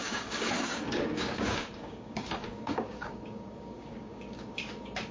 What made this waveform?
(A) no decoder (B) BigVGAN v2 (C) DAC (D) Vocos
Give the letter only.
C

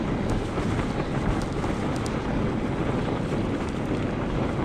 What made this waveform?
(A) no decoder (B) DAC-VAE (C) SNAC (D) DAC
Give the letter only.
A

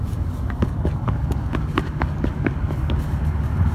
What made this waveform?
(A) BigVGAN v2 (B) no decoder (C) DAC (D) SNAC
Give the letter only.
C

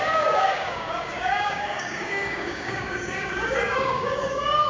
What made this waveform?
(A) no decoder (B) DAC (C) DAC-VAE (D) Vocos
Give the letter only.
B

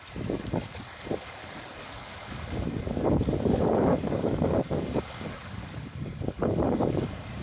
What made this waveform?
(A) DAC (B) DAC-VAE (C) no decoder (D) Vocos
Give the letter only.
A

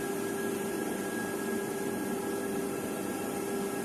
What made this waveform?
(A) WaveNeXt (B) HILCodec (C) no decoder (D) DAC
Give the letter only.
C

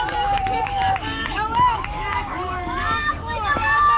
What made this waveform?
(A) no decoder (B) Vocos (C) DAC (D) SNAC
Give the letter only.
C